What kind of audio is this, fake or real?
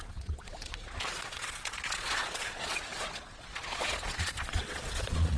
fake